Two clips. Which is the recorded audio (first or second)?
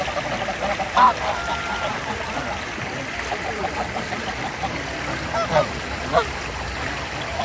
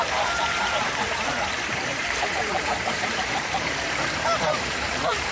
first